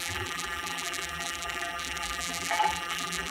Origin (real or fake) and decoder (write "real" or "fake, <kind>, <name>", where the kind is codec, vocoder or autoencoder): fake, vocoder, BigVGAN v2